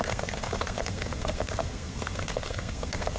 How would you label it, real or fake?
fake